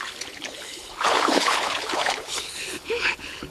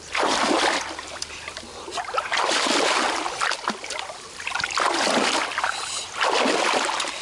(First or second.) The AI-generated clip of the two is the first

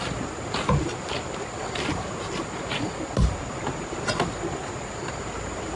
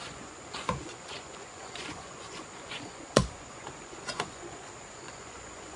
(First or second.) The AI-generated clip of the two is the second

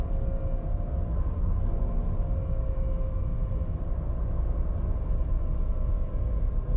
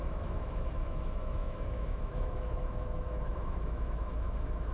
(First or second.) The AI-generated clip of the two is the second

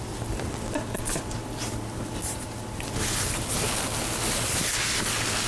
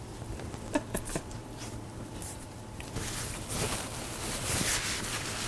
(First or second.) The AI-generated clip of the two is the second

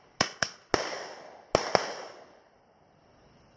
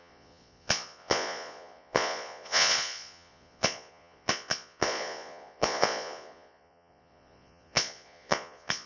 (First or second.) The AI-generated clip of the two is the second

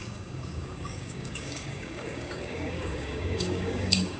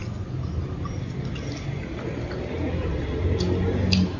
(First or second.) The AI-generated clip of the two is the first